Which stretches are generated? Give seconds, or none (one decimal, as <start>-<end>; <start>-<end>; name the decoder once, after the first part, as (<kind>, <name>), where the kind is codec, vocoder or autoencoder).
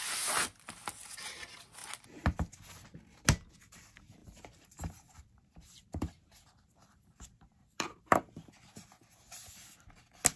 4.2-8.5 (vocoder, BigVGAN v2)